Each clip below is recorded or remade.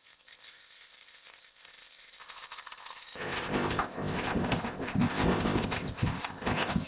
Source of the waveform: remade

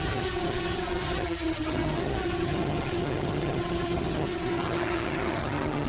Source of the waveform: remade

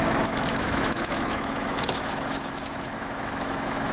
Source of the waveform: remade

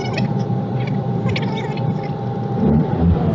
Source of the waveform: remade